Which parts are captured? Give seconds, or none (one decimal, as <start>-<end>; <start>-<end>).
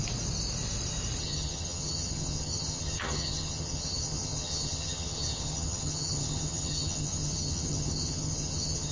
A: 0.0-1.2